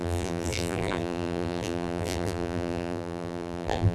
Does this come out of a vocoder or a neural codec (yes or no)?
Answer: yes